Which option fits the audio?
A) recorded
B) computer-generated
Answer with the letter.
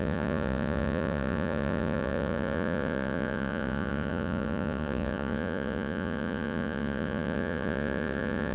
B